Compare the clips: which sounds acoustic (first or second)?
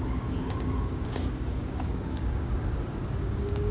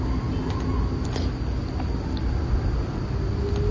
second